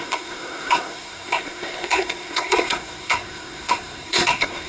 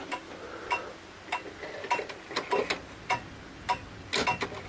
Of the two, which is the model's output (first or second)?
first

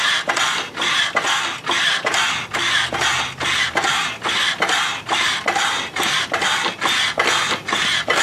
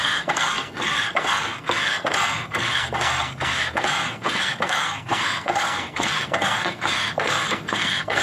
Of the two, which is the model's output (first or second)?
second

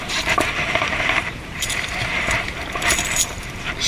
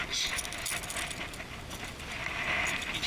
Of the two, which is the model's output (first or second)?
first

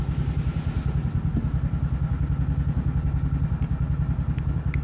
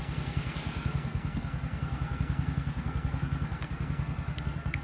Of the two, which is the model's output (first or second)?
second